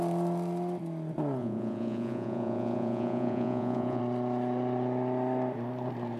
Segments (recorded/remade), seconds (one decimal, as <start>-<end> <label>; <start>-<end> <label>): 0.0-1.4 recorded; 1.4-4.0 remade; 4.0-6.2 recorded

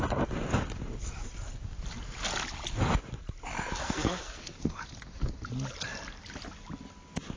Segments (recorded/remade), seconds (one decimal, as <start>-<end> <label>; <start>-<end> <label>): 0.0-3.8 recorded; 3.8-4.8 remade; 4.8-7.4 recorded

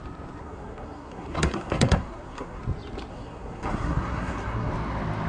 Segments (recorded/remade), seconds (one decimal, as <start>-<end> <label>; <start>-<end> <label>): 0.0-0.4 recorded; 0.4-2.6 remade; 2.6-3.1 recorded; 3.1-4.7 remade; 4.7-5.3 recorded

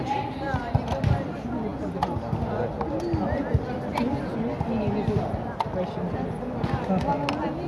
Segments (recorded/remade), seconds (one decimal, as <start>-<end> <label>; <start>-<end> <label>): 0.0-7.7 recorded

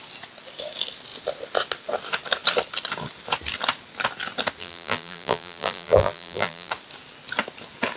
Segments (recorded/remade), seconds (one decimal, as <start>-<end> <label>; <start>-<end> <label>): 0.0-4.6 recorded; 4.6-6.7 remade; 6.7-8.0 recorded